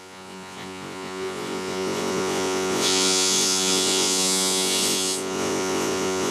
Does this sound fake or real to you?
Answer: fake